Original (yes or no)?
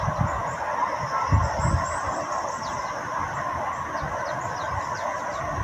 yes